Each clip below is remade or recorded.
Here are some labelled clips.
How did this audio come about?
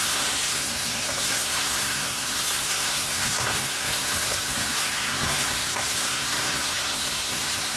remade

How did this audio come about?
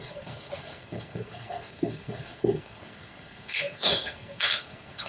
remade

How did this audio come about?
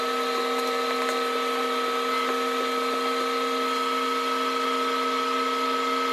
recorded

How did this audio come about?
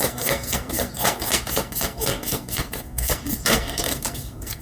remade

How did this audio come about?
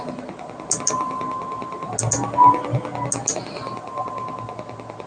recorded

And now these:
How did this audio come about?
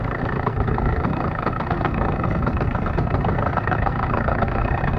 remade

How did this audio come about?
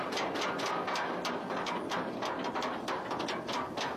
recorded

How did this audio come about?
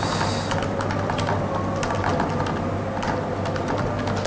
recorded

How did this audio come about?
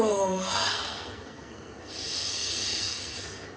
remade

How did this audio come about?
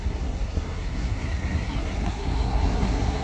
remade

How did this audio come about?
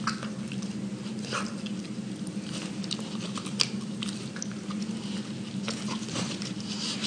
recorded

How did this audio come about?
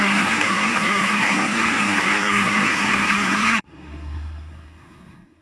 remade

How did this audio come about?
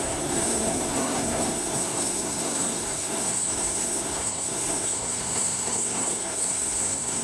remade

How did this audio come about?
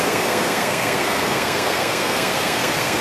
remade